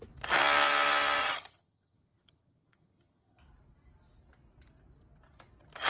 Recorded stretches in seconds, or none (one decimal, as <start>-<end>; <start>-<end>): 0.0-1.2; 3.4-5.9